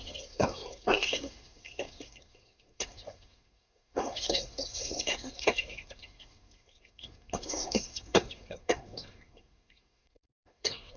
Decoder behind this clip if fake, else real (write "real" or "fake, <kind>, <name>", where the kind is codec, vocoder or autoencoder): fake, codec, SNAC